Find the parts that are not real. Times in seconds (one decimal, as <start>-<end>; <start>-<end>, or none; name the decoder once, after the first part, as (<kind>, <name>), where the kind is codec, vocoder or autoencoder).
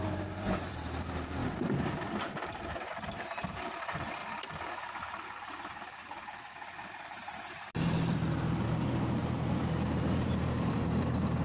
0.0-6.0 (vocoder, BigVGAN v2); 6.9-11.4